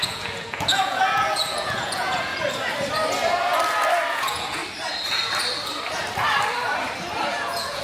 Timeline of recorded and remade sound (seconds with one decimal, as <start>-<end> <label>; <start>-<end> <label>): 0.0-2.3 remade; 2.3-4.1 recorded; 4.1-4.6 remade; 4.6-7.3 recorded; 7.3-7.8 remade